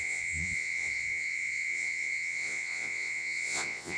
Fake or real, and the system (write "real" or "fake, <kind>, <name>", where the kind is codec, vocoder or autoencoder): fake, vocoder, Vocos